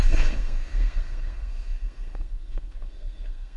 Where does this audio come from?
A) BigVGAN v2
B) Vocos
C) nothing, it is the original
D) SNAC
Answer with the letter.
D